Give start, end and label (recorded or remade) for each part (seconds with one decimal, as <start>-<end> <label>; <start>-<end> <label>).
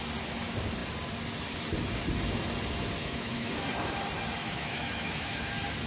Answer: 0.0-3.0 recorded; 3.0-3.5 remade; 3.5-4.4 recorded; 4.4-5.5 remade; 5.5-5.9 recorded